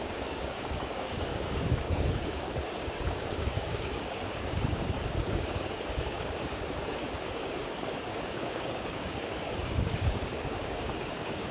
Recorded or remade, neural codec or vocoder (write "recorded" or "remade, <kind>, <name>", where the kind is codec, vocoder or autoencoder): remade, codec, DAC